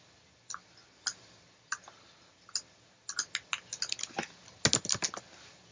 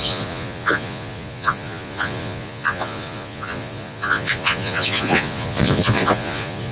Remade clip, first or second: second